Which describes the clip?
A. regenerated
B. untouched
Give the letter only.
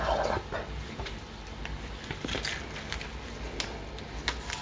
B